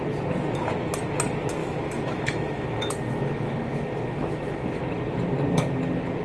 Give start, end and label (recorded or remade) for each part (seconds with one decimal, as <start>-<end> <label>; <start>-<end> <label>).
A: 0.0-1.6 recorded; 1.6-4.8 remade; 4.8-6.2 recorded